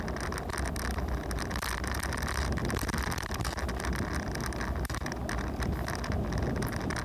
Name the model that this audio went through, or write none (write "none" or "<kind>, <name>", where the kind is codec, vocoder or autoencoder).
none